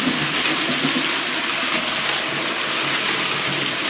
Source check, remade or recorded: recorded